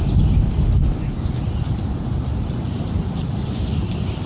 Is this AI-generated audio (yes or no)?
no